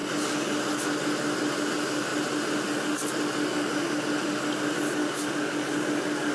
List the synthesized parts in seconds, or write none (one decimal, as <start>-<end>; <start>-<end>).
5.0-6.3